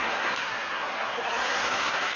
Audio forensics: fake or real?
fake